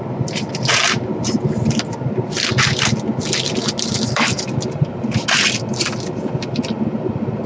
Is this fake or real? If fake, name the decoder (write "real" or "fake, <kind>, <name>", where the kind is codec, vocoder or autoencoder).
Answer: real